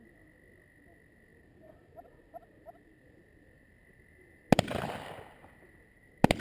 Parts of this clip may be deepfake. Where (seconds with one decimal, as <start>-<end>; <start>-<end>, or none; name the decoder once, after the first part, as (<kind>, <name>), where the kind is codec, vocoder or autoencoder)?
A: none